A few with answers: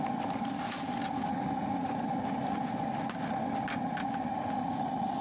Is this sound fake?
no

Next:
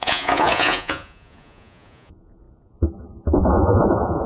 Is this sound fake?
yes